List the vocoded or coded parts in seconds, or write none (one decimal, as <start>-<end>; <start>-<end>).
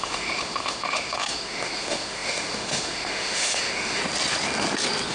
0.0-4.0